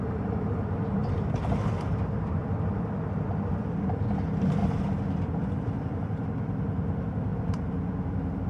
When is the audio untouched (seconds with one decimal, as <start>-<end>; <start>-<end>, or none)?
1.0-1.6